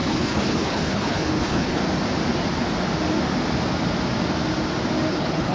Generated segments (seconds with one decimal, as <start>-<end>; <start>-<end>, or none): 0.0-1.8; 5.1-5.5